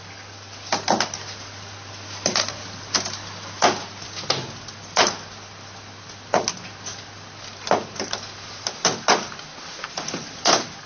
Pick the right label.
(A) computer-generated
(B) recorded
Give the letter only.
B